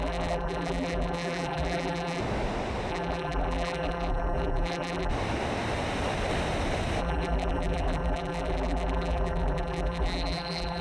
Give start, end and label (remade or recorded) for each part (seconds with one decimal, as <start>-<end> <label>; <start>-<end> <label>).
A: 0.0-2.2 remade; 2.2-2.9 recorded; 2.9-5.1 remade; 5.1-7.0 recorded; 7.0-10.8 remade